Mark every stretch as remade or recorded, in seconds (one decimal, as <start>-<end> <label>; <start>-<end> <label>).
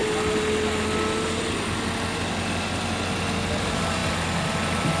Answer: 0.0-5.0 recorded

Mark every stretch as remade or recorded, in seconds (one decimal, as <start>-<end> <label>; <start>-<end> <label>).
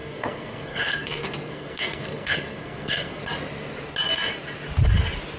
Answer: 0.0-3.2 remade; 3.2-5.4 recorded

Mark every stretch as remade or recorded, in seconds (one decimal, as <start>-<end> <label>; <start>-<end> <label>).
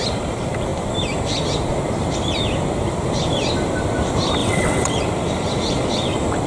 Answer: 0.0-4.4 recorded; 4.4-5.0 remade; 5.0-6.5 recorded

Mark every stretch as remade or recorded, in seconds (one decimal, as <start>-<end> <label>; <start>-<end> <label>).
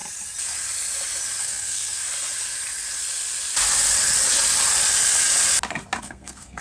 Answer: 0.0-1.4 recorded; 1.4-2.0 remade; 2.0-6.0 recorded; 6.0-6.6 remade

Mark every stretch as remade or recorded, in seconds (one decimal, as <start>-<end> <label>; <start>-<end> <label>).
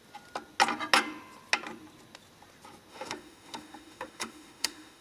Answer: 0.0-2.9 recorded; 2.9-5.0 remade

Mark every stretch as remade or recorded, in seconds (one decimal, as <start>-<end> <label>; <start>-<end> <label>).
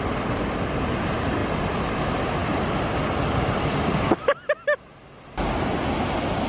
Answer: 0.0-6.5 recorded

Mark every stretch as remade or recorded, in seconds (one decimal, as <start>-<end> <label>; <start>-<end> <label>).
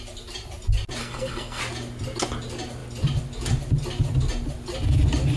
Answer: 0.0-1.0 recorded; 1.0-1.6 remade; 1.6-5.4 recorded